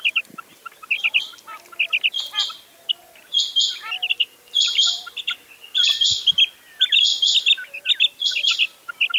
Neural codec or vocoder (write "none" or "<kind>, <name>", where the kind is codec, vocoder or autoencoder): none